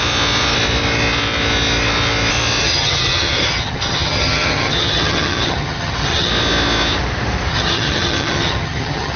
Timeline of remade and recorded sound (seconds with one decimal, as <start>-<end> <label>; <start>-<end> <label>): 0.0-2.6 recorded; 2.6-6.3 remade; 6.3-7.5 recorded; 7.5-9.2 remade